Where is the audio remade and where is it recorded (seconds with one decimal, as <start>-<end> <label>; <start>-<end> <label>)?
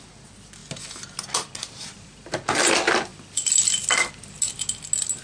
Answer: 0.0-5.2 recorded